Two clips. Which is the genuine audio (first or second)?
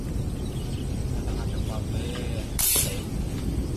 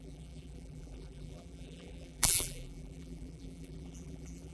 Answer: first